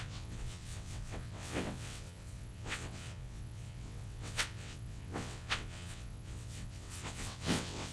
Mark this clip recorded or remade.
remade